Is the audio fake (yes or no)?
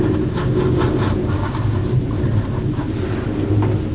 no